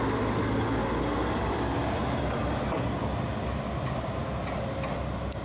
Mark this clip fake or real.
real